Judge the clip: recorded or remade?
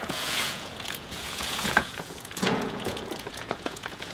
remade